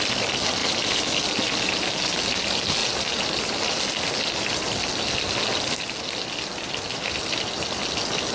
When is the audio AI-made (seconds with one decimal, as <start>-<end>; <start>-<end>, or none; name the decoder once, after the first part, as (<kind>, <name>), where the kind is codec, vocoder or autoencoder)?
none